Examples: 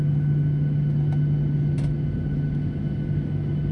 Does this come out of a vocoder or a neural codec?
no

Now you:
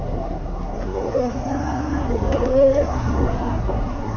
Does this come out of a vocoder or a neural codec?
yes